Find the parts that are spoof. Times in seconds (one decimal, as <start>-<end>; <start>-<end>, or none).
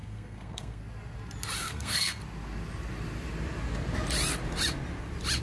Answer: 0.0-0.8; 1.6-2.2